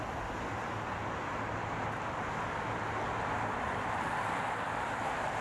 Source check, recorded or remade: recorded